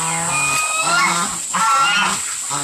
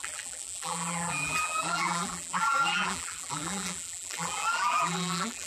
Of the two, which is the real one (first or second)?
first